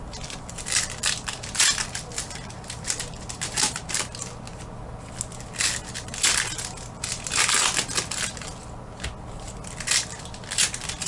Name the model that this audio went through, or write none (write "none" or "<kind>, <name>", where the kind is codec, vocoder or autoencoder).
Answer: none